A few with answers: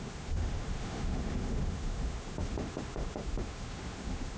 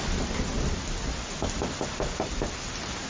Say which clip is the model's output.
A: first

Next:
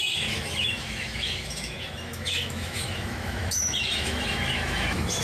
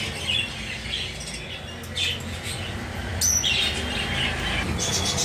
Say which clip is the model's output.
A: first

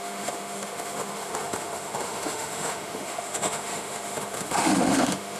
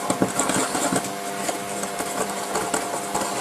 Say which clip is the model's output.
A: first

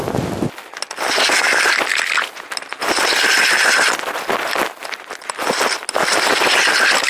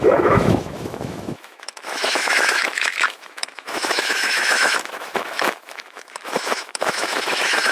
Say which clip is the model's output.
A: second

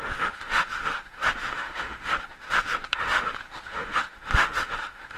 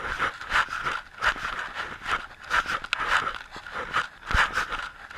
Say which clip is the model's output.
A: first